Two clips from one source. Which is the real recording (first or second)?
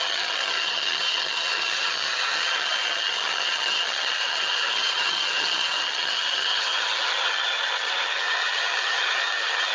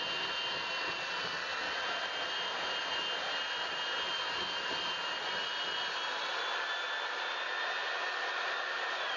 second